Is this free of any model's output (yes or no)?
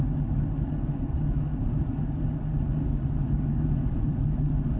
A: yes